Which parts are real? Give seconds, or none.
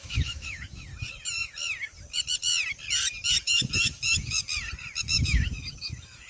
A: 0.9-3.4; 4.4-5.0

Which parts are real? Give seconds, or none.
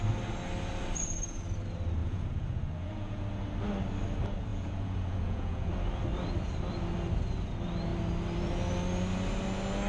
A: 0.0-2.0; 3.2-4.5; 5.7-9.9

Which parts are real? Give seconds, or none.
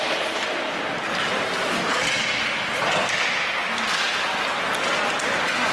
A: 0.0-5.7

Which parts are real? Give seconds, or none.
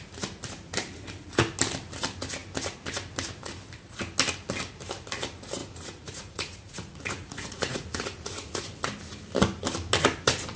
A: 0.0-5.6; 8.6-10.6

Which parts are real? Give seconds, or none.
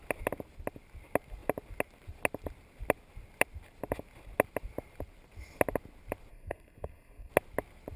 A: 0.0-6.3; 7.3-8.0